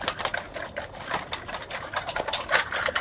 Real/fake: real